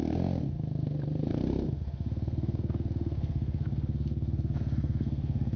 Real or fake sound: fake